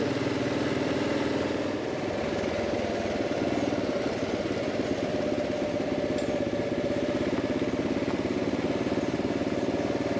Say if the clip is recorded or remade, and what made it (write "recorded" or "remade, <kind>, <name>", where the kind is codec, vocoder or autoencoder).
recorded